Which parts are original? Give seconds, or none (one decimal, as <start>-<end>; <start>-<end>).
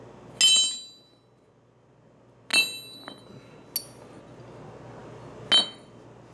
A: 0.0-6.3